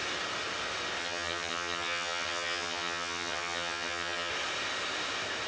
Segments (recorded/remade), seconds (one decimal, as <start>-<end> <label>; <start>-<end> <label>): 0.0-1.0 recorded; 1.0-4.3 remade; 4.3-5.5 recorded